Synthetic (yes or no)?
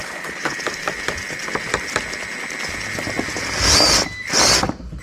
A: no